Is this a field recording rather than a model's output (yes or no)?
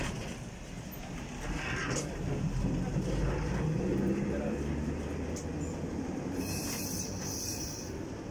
yes